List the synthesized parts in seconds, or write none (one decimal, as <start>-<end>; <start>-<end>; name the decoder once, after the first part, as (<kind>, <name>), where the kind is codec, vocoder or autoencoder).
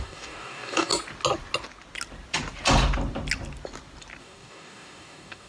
0.0-0.9 (codec, DAC); 4.2-5.5